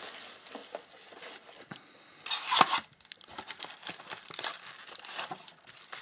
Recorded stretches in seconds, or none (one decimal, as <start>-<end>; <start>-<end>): 0.0-6.0